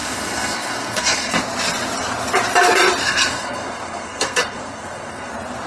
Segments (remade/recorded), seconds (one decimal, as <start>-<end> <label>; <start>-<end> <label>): 0.0-1.4 remade; 1.4-3.0 recorded; 3.0-5.3 remade; 5.3-5.7 recorded